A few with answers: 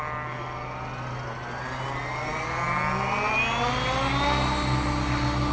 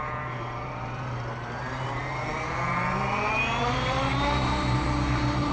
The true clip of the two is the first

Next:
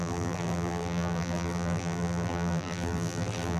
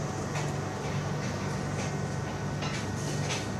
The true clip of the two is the second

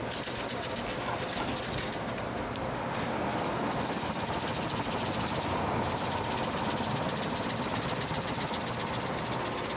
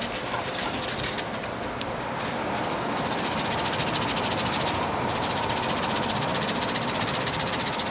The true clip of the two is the first